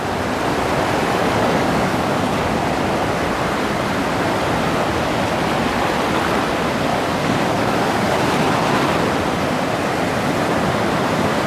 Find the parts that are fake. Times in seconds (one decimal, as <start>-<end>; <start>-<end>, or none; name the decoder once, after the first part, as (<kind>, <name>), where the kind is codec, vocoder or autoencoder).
1.2-2.5 (codec, DAC); 6.9-8.2